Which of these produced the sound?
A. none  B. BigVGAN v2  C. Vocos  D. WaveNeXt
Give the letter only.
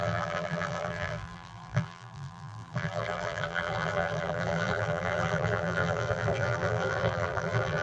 B